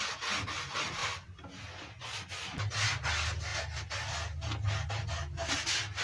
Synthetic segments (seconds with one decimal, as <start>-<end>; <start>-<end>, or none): none